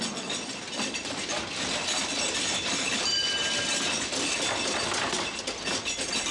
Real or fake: real